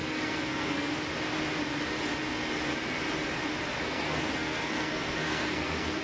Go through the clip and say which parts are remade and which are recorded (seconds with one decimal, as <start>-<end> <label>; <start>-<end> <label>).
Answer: 0.0-0.9 remade; 0.9-3.8 recorded; 3.8-6.0 remade